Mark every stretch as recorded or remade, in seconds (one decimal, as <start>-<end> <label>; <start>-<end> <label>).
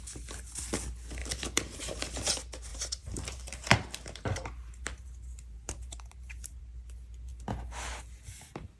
0.0-1.2 recorded; 1.2-2.3 remade; 2.3-2.7 recorded; 2.7-6.6 remade; 6.6-8.8 recorded